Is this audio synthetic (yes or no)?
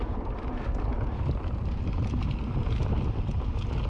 no